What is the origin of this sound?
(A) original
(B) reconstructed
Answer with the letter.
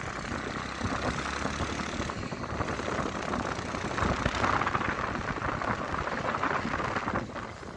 A